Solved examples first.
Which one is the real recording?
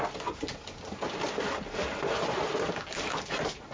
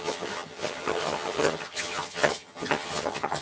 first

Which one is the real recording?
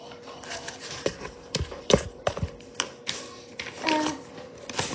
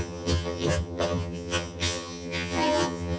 first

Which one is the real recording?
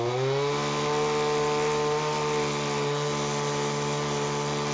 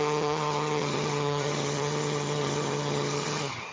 first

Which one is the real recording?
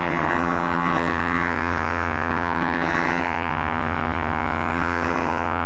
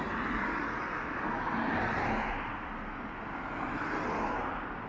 second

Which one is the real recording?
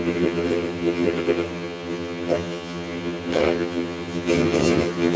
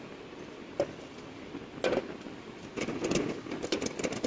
second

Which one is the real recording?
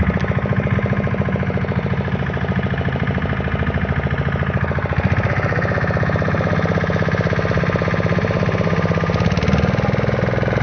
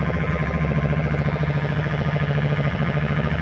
first